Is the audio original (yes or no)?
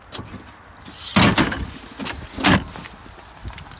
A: yes